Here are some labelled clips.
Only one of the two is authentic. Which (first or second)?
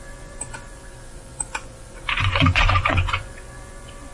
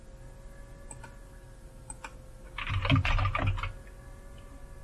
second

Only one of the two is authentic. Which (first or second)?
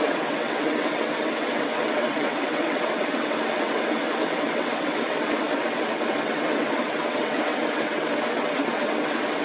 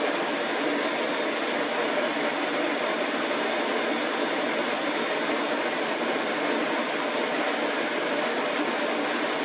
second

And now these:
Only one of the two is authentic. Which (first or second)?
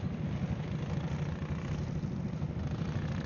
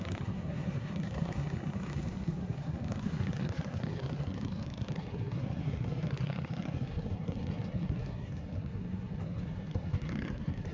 first